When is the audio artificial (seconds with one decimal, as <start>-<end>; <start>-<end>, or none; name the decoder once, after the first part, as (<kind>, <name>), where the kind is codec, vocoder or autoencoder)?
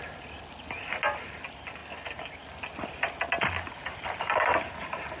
none